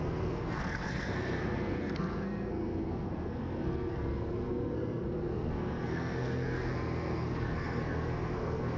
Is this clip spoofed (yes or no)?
yes